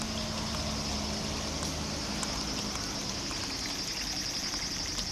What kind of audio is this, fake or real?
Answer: real